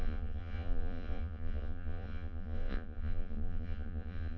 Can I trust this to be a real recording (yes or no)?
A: no